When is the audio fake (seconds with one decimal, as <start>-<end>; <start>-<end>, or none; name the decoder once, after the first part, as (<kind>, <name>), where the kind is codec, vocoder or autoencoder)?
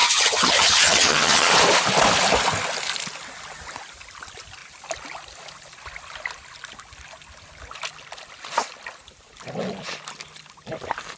0.0-1.5 (vocoder, HiFi-GAN)